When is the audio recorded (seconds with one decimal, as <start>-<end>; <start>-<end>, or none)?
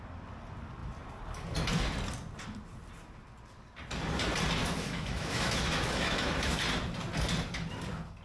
0.0-4.6; 6.6-8.2